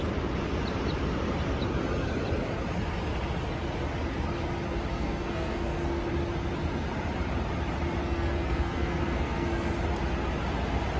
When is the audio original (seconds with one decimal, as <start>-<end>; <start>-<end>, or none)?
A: 0.0-4.9; 6.0-8.0; 9.7-11.0